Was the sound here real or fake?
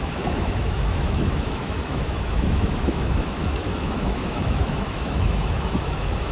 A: fake